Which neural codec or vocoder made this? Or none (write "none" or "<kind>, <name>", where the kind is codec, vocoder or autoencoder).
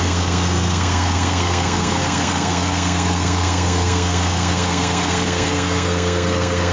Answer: codec, SNAC